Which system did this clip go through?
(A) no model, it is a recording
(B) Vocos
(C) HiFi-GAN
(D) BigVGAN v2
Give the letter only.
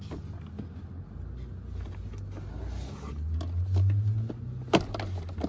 A